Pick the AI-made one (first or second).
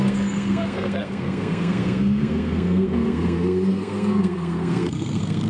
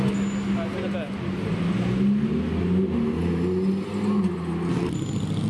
first